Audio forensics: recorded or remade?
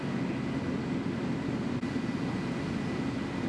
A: recorded